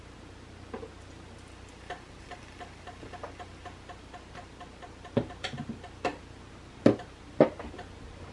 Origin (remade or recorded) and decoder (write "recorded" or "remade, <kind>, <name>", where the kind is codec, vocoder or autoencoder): remade, vocoder, BigVGAN v2